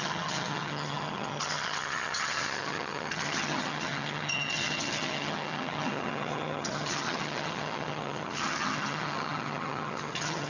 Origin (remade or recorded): remade